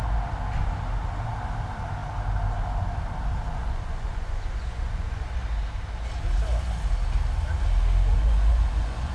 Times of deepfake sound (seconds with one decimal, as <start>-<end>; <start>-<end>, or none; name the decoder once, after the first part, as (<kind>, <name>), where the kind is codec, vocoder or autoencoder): 3.5-5.3 (vocoder, Vocos); 8.1-9.1